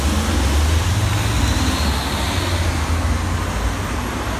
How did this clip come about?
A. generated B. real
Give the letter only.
B